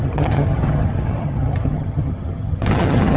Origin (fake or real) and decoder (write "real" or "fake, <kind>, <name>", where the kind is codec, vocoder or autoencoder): fake, vocoder, HiFi-GAN